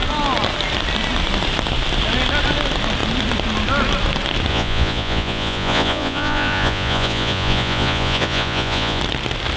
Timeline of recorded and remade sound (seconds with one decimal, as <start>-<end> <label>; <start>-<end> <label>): 0.0-4.5 recorded; 4.5-9.0 remade; 9.0-9.6 recorded